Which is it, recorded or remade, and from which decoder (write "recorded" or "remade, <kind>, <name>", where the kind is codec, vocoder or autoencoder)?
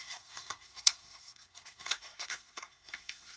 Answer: remade, codec, SNAC